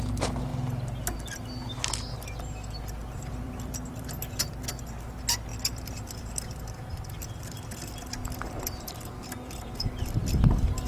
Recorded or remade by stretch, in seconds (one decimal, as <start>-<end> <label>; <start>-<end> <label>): 0.0-3.0 recorded; 3.0-4.7 remade; 4.7-5.5 recorded; 5.5-9.5 remade; 9.5-10.9 recorded